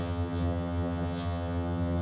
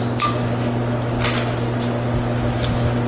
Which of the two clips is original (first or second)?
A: second